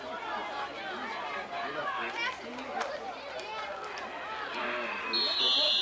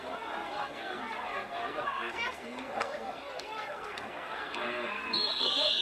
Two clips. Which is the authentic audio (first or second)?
first